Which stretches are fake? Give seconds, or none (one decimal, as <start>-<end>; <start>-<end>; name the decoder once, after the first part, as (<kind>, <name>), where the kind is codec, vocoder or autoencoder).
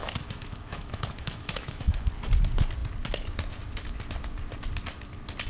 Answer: 0.0-2.1 (autoencoder, DAC-VAE)